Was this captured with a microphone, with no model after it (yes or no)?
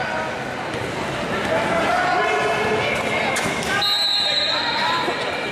yes